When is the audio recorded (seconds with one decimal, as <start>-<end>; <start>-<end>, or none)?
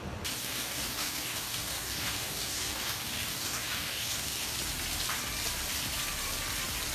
0.0-0.4; 4.5-6.9